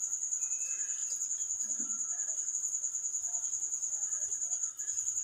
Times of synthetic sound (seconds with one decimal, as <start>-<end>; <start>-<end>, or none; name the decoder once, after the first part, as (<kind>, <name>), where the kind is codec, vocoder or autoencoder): 3.8-4.8 (vocoder, BigVGAN v2)